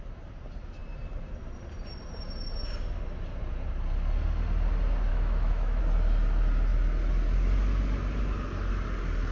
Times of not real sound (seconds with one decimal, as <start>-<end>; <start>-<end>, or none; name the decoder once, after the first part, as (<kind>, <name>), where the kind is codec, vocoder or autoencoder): 5.1-5.8 (autoencoder, DAC-VAE)